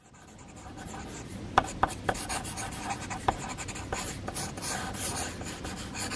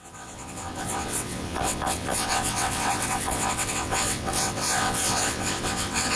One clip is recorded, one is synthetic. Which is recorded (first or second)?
first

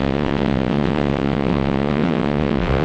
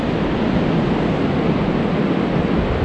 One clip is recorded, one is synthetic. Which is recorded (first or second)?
second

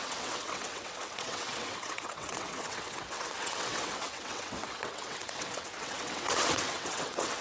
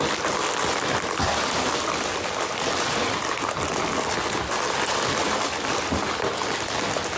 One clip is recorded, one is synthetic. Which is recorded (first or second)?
second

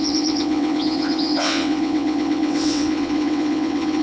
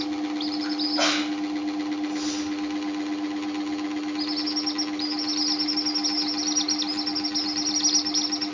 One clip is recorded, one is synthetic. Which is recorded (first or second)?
second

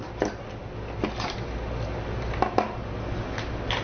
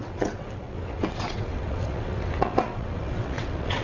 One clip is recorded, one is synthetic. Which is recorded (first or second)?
first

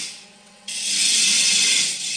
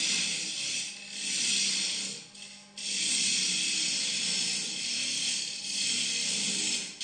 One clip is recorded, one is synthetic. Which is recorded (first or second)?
second